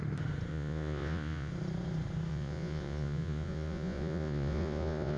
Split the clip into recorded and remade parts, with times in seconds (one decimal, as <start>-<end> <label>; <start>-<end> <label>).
0.0-0.5 recorded; 0.5-1.5 remade; 1.5-2.3 recorded; 2.3-5.2 remade